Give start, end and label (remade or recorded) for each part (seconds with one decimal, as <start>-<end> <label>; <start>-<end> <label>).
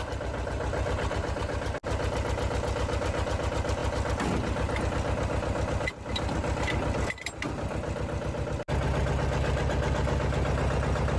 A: 0.0-11.2 recorded